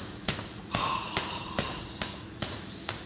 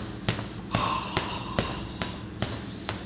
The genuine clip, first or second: second